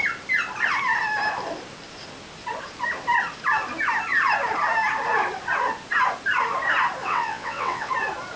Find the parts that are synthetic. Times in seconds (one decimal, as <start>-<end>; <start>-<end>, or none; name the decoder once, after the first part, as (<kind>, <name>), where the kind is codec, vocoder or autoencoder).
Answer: 7.0-7.9 (vocoder, WaveNeXt)